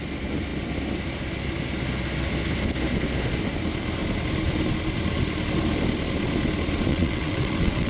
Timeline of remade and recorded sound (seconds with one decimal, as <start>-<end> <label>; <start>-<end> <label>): 0.0-6.9 recorded; 6.9-7.9 remade